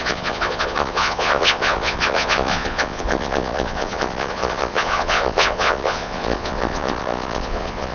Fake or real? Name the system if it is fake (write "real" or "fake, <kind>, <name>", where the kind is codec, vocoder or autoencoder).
fake, vocoder, Vocos